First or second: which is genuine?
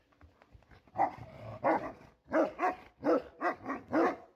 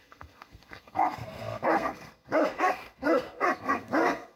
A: first